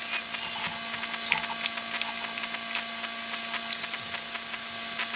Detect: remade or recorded recorded